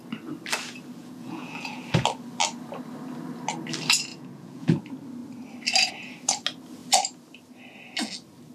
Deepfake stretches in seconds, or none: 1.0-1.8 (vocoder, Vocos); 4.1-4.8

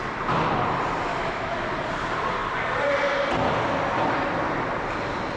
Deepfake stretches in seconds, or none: 1.1-1.7 (autoencoder, DAC-VAE)

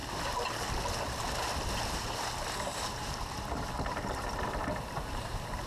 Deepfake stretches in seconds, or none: 1.8-5.7 (vocoder, BigVGAN v2)

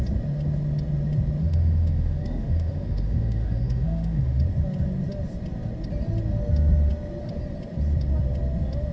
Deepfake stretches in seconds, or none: 1.4-4.4 (autoencoder, DAC-VAE)

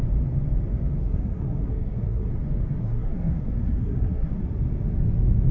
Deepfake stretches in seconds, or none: 1.0-2.3 (codec, SNAC); 2.8-4.4

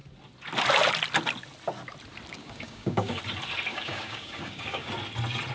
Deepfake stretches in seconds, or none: 2.3-3.2 (codec, DAC); 3.7-4.9

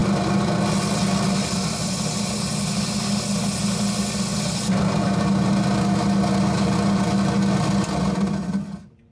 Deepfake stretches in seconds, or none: none

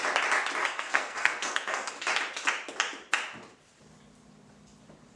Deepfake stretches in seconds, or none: 0.6-1.9 (codec, SNAC)